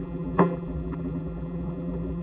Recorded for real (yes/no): no